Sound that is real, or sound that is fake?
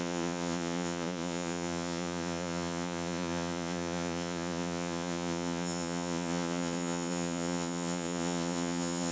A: fake